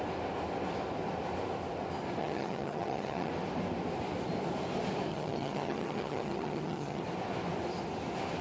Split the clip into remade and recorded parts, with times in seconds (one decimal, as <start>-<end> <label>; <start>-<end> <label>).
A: 0.0-2.2 recorded; 2.2-3.3 remade; 3.3-5.1 recorded; 5.1-7.0 remade; 7.0-8.4 recorded

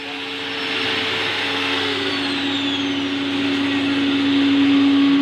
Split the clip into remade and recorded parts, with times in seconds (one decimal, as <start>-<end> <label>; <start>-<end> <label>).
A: 0.0-1.3 recorded; 1.3-2.1 remade; 2.1-5.2 recorded

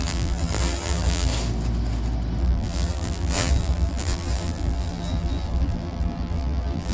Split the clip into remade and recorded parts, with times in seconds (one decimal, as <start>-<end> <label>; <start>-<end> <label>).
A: 0.0-1.3 remade; 1.3-2.4 recorded; 2.4-6.9 remade

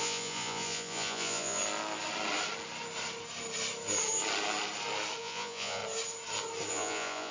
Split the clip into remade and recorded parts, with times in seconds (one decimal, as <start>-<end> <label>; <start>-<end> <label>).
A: 0.0-1.6 remade; 1.6-5.2 recorded; 5.2-5.8 remade; 5.8-6.7 recorded; 6.7-7.3 remade

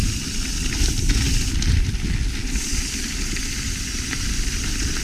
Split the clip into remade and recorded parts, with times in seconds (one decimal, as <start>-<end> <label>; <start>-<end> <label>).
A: 0.0-5.0 recorded

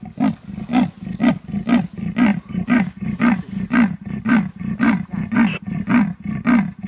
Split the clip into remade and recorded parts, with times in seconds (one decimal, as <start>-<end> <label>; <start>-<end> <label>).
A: 0.0-2.3 recorded; 2.3-5.1 remade; 5.1-6.9 recorded

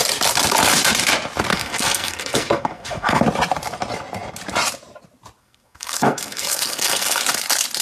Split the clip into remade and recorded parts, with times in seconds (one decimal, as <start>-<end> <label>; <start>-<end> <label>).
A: 0.0-1.5 recorded; 1.5-3.2 remade; 3.2-5.4 recorded; 5.4-7.2 remade; 7.2-7.8 recorded